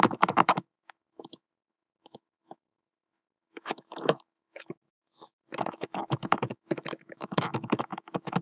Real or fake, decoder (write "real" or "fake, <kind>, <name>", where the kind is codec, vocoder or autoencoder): fake, autoencoder, DAC-VAE